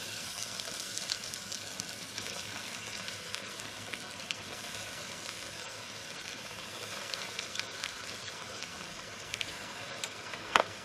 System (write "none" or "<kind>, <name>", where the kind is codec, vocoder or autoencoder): codec, SNAC